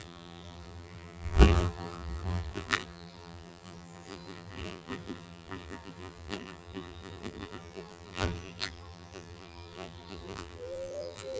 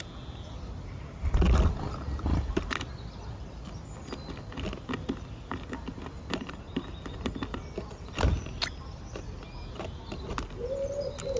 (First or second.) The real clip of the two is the second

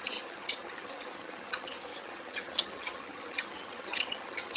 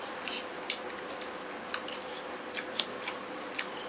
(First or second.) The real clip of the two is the second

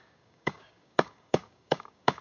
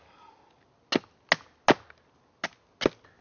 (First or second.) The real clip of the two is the second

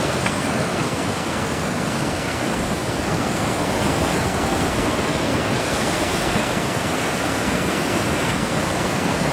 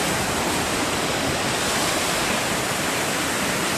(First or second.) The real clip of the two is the second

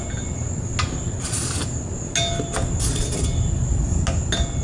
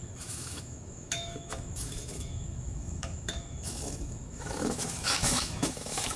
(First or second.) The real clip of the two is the first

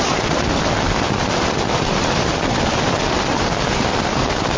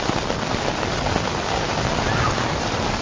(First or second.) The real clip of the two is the second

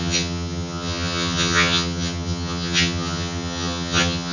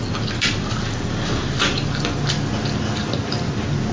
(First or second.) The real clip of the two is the second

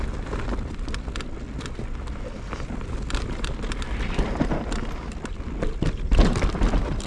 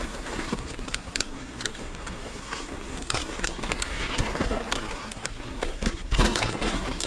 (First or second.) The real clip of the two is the first